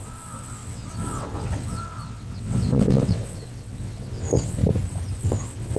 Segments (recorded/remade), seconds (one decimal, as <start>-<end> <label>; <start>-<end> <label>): 0.0-4.6 remade; 4.6-5.2 recorded; 5.2-5.8 remade